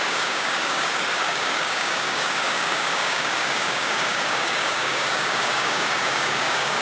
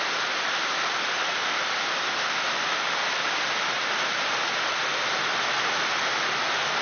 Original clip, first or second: second